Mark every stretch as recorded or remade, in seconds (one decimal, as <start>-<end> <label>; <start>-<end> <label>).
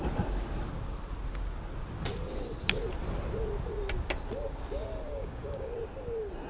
0.0-5.1 recorded; 5.1-5.7 remade; 5.7-6.5 recorded